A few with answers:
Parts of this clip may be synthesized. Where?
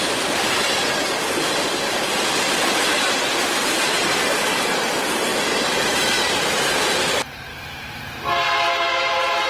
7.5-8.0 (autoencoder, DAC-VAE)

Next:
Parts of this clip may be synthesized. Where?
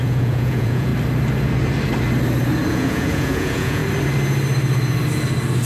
0.0-0.9 (vocoder, Vocos); 2.7-3.8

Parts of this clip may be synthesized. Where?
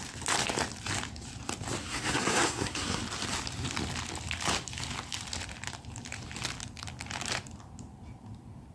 1.8-3.0 (codec, SNAC)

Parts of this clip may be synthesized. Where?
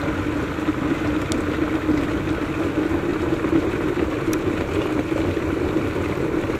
none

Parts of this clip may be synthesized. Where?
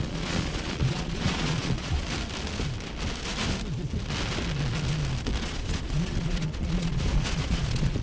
0.0-2.0 (vocoder, Vocos); 5.4-8.0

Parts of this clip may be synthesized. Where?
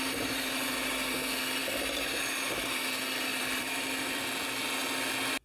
3.3-4.2 (vocoder, BigVGAN v2)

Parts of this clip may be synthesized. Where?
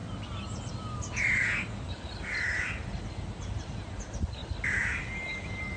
none